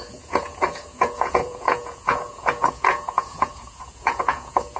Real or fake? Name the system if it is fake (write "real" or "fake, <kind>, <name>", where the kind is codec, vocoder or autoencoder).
fake, vocoder, Vocos